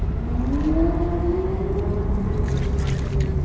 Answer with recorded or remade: recorded